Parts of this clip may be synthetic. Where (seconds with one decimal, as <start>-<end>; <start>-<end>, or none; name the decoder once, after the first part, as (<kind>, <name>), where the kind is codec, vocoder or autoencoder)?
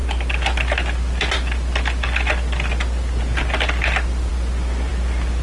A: none